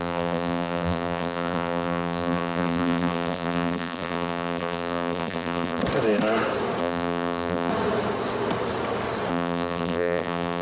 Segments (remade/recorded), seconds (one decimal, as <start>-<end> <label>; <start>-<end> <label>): 0.0-5.8 remade; 5.8-6.8 recorded; 6.8-7.7 remade; 7.7-9.3 recorded; 9.3-10.6 remade